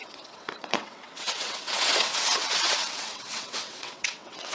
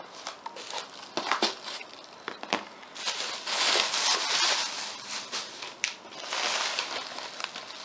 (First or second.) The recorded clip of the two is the second